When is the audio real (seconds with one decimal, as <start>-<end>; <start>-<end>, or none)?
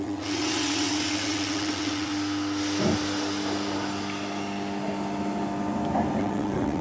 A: 2.1-6.2